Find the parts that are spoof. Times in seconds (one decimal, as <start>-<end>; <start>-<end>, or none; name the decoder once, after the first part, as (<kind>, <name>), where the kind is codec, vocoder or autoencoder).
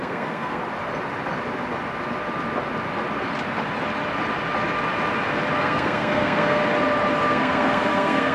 0.0-0.6 (codec, SNAC); 5.6-6.6; 7.3-8.3